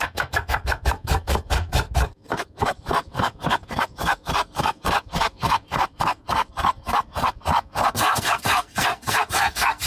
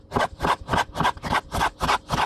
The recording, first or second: second